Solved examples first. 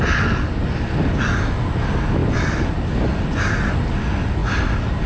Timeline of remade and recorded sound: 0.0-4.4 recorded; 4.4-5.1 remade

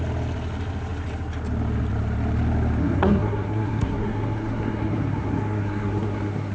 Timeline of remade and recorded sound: 0.0-2.8 recorded; 2.8-6.5 remade

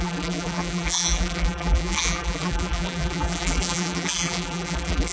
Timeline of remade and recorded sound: 0.0-5.1 remade

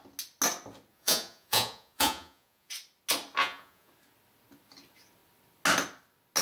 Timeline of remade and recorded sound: 0.0-0.9 recorded; 0.9-2.7 remade; 2.7-3.4 recorded; 3.4-3.9 remade; 3.9-6.4 recorded

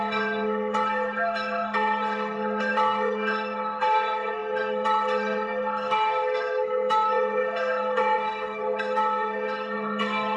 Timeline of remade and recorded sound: 0.0-10.4 remade

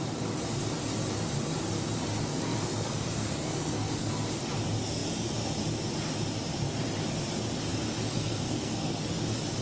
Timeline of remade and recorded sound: 0.0-2.3 recorded; 2.3-4.1 remade; 4.1-8.0 recorded; 8.0-9.1 remade; 9.1-9.6 recorded